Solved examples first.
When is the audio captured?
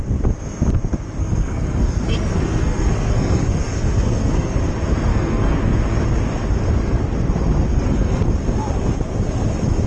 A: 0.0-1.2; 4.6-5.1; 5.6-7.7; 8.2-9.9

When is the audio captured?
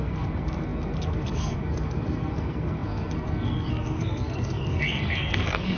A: none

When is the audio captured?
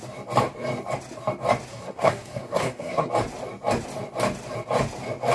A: 0.0-1.7; 3.1-5.3